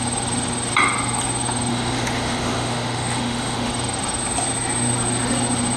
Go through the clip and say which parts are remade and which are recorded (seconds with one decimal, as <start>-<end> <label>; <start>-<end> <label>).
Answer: 0.0-1.7 recorded; 1.7-3.7 remade; 3.7-5.8 recorded